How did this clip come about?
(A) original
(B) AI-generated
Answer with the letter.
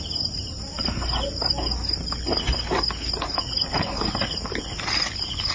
A